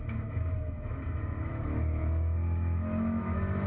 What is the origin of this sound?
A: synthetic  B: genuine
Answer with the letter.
A